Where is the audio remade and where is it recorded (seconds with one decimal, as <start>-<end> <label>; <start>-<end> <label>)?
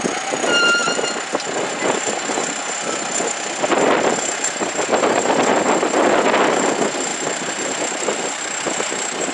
0.0-7.1 recorded; 7.1-8.4 remade; 8.4-9.3 recorded